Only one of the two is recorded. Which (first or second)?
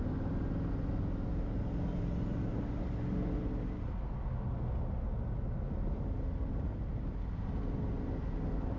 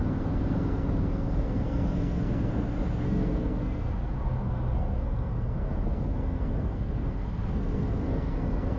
first